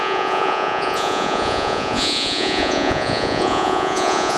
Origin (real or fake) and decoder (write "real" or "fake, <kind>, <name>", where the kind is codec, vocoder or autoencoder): fake, vocoder, Vocos